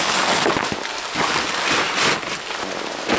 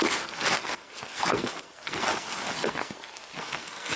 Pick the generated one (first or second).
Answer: second